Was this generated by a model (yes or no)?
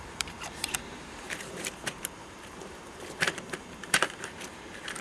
yes